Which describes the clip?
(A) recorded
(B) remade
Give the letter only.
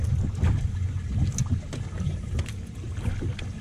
A